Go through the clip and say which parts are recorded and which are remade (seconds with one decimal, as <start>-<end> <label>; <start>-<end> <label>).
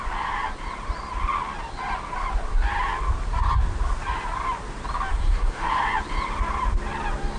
0.0-5.1 recorded; 5.1-5.7 remade; 5.7-7.4 recorded